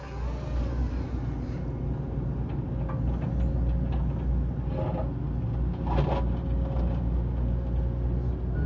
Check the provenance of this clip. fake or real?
real